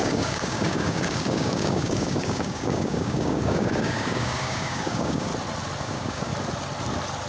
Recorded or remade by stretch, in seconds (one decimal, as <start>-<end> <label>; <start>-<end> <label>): 0.0-5.3 remade; 5.3-5.8 recorded; 5.8-6.3 remade; 6.3-7.3 recorded